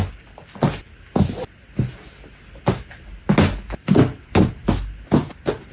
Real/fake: real